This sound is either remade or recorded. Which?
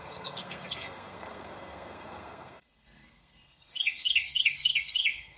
remade